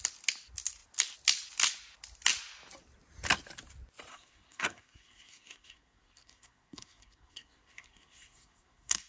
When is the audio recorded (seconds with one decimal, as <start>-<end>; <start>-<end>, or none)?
0.0-4.1